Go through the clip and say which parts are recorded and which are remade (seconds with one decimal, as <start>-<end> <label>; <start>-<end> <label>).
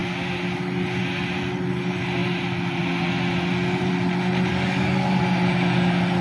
0.0-4.5 recorded; 4.5-5.2 remade; 5.2-6.2 recorded